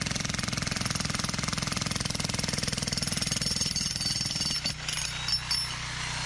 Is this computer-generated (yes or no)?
no